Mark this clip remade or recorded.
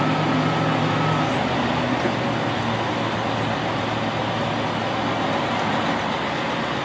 recorded